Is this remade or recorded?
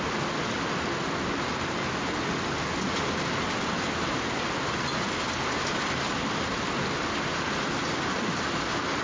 recorded